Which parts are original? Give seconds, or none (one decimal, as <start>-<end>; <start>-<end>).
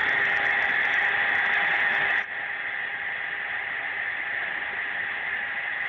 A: 0.0-3.5